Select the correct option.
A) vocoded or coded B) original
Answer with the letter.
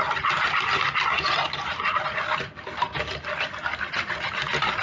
B